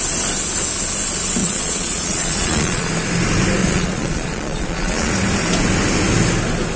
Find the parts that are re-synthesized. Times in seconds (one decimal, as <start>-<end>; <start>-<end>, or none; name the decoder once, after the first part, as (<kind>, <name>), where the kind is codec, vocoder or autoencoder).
1.4-2.9 (vocoder, Vocos); 3.6-5.1